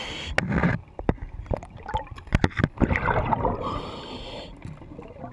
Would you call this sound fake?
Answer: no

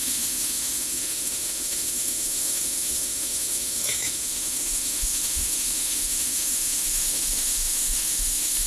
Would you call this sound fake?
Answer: yes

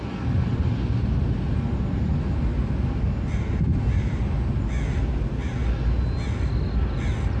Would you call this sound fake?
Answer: no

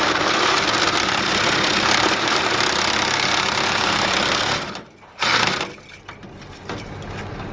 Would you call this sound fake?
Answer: no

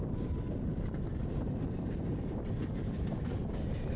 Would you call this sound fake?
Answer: no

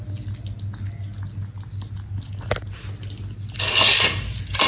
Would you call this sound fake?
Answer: no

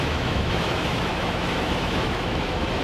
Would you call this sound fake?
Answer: yes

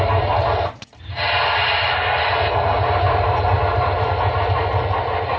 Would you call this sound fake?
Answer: no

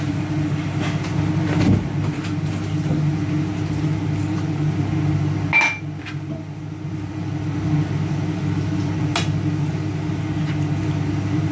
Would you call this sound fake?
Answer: no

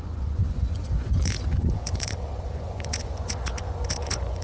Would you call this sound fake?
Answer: yes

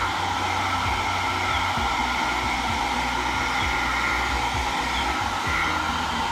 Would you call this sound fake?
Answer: no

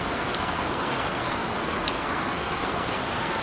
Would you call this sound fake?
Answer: yes